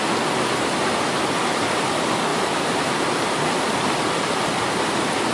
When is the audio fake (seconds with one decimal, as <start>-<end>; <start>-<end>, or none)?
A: 2.3-3.5